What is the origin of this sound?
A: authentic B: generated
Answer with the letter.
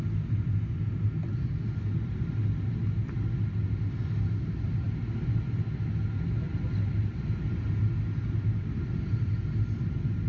A